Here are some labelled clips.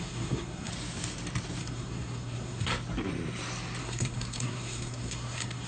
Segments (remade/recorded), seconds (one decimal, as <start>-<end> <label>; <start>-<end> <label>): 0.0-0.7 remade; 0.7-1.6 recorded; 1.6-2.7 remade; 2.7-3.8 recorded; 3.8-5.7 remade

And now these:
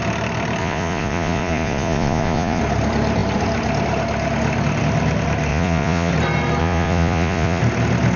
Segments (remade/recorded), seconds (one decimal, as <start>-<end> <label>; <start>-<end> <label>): 0.0-0.6 recorded; 0.6-2.6 remade; 2.6-5.5 recorded; 5.5-6.1 remade; 6.1-6.6 recorded; 6.6-7.6 remade; 7.6-8.2 recorded

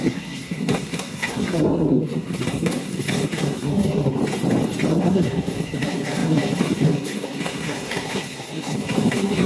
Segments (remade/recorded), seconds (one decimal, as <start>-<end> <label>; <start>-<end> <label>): 0.0-4.2 remade; 4.2-4.9 recorded; 4.9-9.5 remade

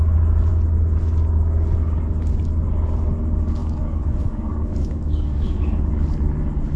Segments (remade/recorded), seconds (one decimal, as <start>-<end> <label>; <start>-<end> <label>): 0.0-3.6 recorded; 3.6-5.9 remade; 5.9-6.8 recorded

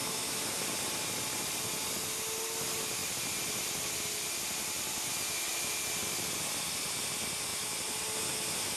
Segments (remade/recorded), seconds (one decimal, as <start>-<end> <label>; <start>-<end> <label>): 0.0-0.6 remade; 0.6-8.8 recorded

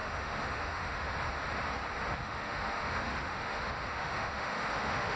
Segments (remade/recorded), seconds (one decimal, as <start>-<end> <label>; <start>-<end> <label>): 0.0-1.1 remade; 1.1-2.1 recorded; 2.1-5.2 remade

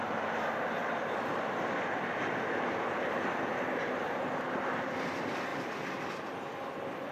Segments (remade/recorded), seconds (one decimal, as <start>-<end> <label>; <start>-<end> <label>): 0.0-0.8 recorded; 0.8-1.7 remade; 1.7-5.5 recorded; 5.5-6.1 remade; 6.1-7.1 recorded